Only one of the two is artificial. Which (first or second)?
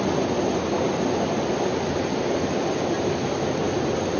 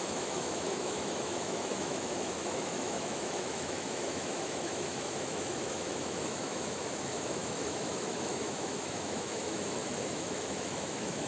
second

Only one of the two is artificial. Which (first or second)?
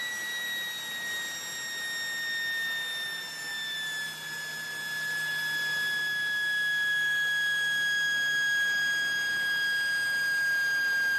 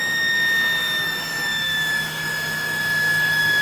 second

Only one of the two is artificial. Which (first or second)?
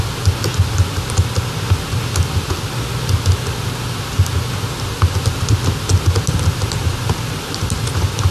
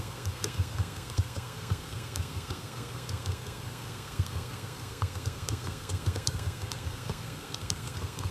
second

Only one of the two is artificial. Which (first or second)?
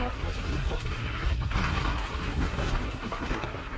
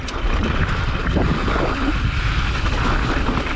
first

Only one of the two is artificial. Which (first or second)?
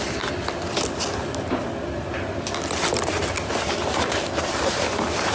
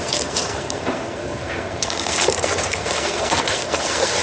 second